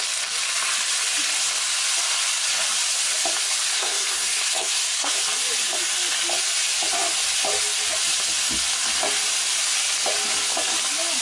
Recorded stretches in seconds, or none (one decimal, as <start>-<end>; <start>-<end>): 0.0-3.7; 5.2-11.2